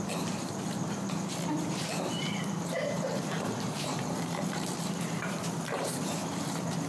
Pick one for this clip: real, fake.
fake